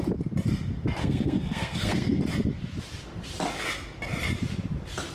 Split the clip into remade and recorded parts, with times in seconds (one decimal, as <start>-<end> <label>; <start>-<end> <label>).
0.0-1.0 recorded; 1.0-2.2 remade; 2.2-5.1 recorded